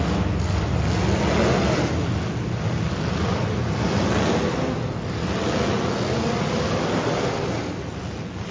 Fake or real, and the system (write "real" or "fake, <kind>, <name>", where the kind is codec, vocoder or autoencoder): real